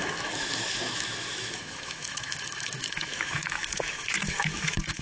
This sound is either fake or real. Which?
fake